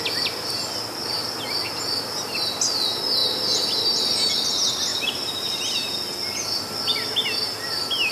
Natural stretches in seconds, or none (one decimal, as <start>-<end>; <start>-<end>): 0.0-4.9; 5.6-8.1